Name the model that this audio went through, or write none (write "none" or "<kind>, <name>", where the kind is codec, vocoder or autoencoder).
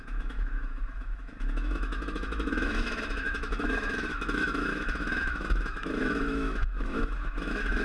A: autoencoder, DAC-VAE